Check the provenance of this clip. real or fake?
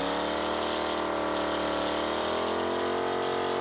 real